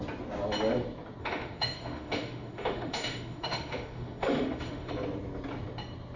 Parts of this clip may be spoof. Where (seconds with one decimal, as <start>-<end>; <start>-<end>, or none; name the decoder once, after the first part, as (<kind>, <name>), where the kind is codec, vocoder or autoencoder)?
1.2-4.9 (autoencoder, DAC-VAE)